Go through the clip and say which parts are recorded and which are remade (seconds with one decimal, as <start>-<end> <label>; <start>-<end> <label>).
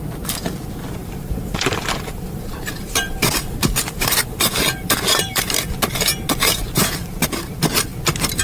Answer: 0.0-1.0 recorded; 1.0-5.6 remade; 5.6-6.4 recorded; 6.4-7.4 remade; 7.4-8.4 recorded